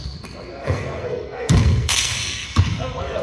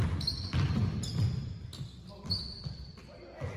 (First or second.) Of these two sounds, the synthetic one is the first